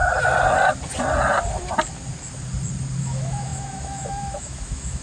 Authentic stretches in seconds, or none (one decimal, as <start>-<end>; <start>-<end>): 0.0-3.0